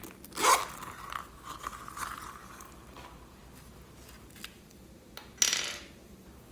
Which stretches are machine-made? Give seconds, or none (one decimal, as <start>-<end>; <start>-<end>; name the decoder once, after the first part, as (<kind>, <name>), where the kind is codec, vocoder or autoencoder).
none